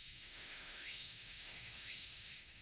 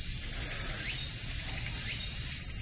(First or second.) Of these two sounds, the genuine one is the second